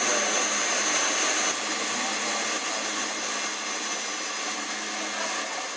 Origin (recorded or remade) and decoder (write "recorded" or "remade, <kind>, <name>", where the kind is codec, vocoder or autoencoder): recorded